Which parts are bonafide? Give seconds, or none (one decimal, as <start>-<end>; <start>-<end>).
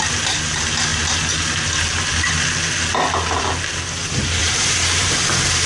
0.0-4.4; 5.1-5.7